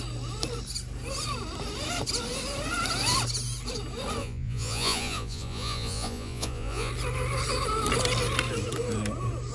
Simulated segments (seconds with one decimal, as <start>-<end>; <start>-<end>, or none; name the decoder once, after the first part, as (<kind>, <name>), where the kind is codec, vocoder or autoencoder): 4.2-6.9 (vocoder, Vocos)